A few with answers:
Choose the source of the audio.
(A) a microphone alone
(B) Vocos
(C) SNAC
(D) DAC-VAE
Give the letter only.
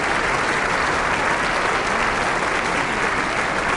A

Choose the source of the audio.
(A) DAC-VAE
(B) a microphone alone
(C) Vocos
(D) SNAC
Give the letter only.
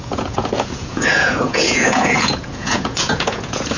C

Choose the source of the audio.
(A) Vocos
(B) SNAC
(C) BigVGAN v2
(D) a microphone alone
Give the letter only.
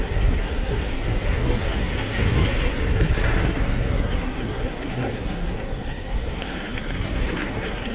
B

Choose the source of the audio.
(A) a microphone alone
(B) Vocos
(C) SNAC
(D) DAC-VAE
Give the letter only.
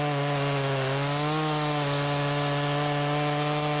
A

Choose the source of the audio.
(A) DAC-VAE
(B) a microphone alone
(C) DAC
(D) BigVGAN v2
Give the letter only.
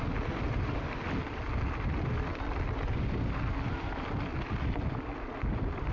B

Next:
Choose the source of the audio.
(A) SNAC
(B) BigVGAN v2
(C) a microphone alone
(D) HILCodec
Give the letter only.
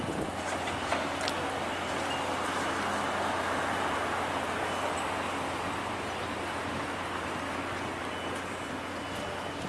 C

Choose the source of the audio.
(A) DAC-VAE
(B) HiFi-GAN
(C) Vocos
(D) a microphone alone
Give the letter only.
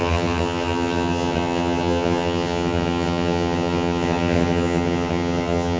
B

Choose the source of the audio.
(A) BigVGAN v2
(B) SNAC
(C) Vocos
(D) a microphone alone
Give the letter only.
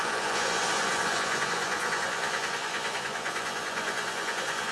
C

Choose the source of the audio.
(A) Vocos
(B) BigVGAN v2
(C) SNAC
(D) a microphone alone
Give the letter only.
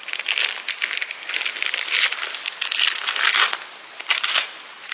D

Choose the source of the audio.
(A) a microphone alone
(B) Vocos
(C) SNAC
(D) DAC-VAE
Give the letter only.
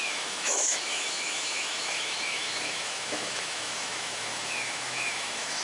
D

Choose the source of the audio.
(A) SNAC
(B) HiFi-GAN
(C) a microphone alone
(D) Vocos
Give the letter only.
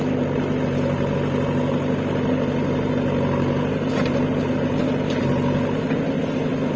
C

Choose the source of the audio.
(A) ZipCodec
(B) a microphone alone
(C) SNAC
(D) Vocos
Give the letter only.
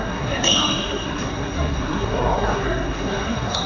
C